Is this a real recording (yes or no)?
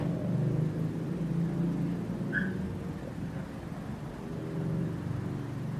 yes